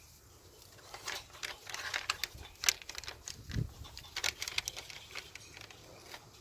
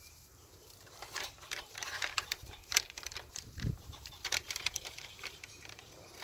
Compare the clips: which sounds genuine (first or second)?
first